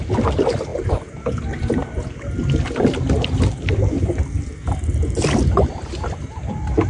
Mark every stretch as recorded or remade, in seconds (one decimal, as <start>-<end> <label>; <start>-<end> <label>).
0.0-6.9 recorded

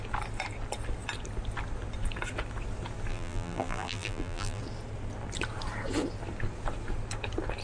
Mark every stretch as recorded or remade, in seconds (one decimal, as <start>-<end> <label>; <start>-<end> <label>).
0.0-3.1 recorded; 3.1-4.6 remade; 4.6-7.6 recorded

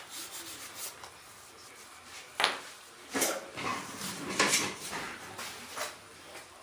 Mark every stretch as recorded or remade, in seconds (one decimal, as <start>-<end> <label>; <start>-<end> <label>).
0.0-3.7 recorded; 3.7-5.2 remade; 5.2-6.6 recorded